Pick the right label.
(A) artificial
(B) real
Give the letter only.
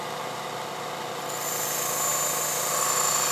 B